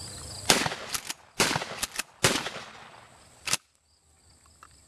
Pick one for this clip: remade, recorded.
recorded